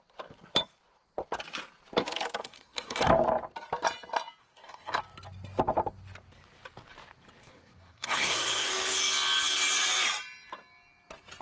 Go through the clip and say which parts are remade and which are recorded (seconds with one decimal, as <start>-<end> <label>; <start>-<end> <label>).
0.0-2.4 recorded; 2.4-3.1 remade; 3.1-4.4 recorded; 4.4-5.0 remade; 5.0-7.4 recorded; 7.4-8.7 remade; 8.7-11.4 recorded